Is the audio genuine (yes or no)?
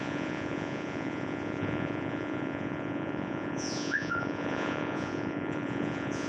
no